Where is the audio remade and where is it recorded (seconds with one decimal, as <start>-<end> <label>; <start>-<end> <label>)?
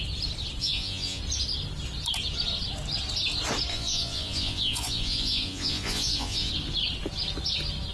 0.0-0.6 recorded; 0.6-1.2 remade; 1.2-3.7 recorded; 3.7-6.5 remade; 6.5-7.9 recorded